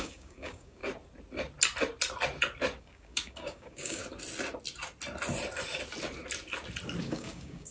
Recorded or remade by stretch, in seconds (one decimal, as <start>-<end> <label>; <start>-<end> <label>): 0.0-0.8 remade; 0.8-2.8 recorded; 2.8-4.0 remade; 4.0-7.0 recorded; 7.0-7.7 remade